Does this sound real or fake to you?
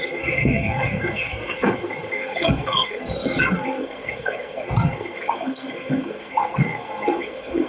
fake